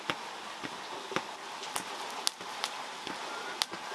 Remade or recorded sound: recorded